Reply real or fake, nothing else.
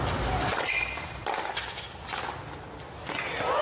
real